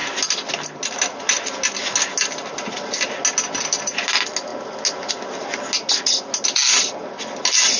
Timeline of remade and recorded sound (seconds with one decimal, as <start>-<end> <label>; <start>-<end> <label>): 0.0-7.8 recorded